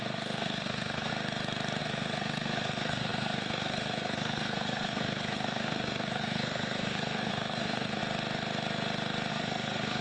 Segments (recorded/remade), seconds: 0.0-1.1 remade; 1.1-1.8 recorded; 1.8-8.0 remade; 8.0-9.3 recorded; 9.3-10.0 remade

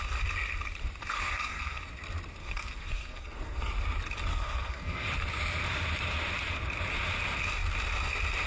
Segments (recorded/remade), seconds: 0.0-1.0 recorded; 1.0-1.8 remade; 1.8-2.4 recorded; 2.4-3.7 remade; 3.7-4.3 recorded; 4.3-5.1 remade; 5.1-8.5 recorded

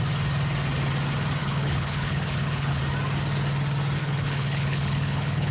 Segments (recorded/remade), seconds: 0.0-1.4 recorded; 1.4-2.8 remade; 2.8-4.0 recorded; 4.0-5.5 remade

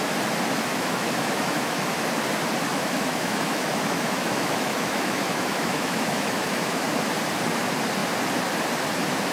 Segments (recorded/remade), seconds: 0.0-0.7 recorded; 0.7-2.1 remade; 2.1-2.7 recorded; 2.7-6.9 remade; 6.9-9.3 recorded

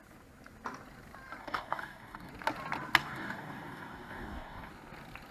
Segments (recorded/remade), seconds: 0.0-1.4 recorded; 1.4-2.3 remade; 2.3-3.0 recorded; 3.0-4.7 remade; 4.7-5.3 recorded